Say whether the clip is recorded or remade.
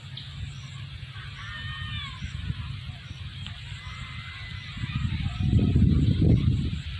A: recorded